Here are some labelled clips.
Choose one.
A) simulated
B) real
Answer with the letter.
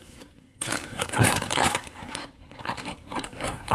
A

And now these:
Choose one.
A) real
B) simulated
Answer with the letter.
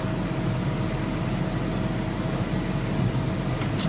A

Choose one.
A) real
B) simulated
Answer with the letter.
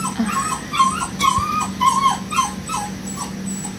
A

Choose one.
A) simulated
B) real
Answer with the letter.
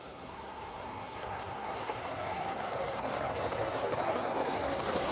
A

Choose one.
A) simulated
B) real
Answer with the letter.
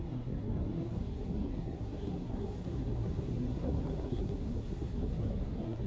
A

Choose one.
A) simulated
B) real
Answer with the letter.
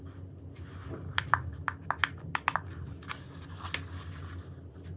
B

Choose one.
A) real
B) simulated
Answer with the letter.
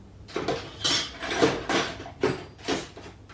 A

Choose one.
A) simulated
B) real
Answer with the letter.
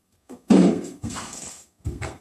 A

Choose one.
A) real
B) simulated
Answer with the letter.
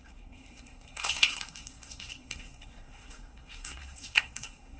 B